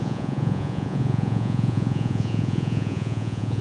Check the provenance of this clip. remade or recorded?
remade